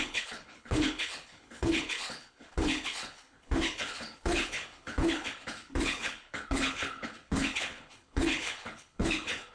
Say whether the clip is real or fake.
fake